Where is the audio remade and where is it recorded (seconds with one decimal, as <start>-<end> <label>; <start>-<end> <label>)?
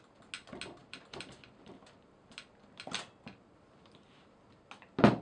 0.0-5.2 recorded